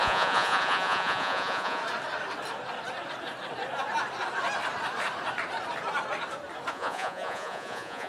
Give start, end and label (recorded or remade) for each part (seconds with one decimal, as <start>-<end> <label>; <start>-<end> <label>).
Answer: 0.0-1.8 remade; 1.8-6.7 recorded; 6.7-8.1 remade